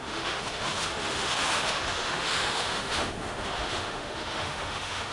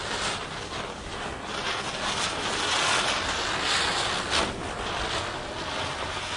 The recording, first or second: second